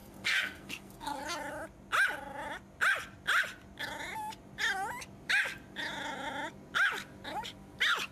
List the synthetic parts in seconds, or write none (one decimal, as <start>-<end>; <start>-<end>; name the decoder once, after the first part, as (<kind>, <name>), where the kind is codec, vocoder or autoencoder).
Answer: 0.0-1.2 (codec, SNAC)